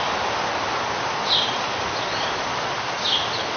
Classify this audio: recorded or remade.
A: recorded